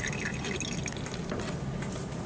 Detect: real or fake real